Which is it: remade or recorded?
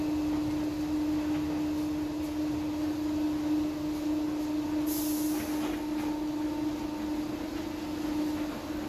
recorded